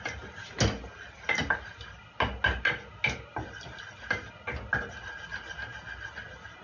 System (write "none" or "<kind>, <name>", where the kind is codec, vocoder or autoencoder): none